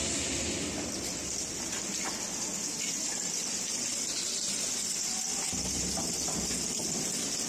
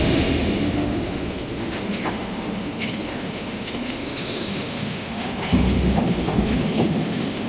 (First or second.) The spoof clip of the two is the second